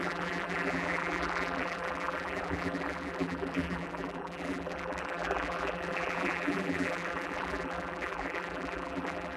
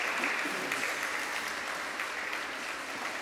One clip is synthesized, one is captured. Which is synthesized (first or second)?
first